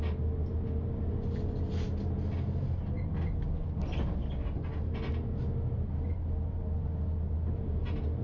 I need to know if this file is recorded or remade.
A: recorded